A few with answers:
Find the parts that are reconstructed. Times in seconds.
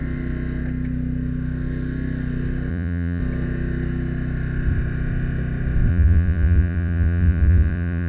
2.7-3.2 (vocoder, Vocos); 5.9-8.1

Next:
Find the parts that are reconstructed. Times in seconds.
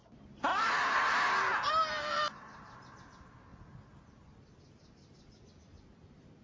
none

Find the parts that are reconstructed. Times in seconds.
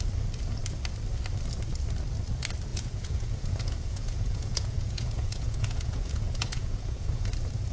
2.7-7.3 (vocoder, Vocos)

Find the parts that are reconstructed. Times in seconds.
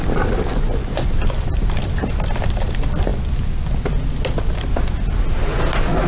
0.5-1.1 (vocoder, Vocos)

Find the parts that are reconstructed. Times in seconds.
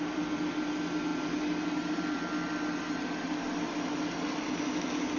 none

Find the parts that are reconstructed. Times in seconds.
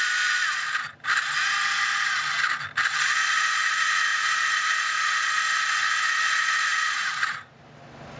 4.1-5.4 (vocoder, Vocos); 6.7-7.6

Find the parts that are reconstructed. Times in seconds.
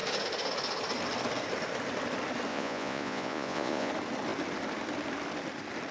2.5-3.9 (vocoder, Vocos)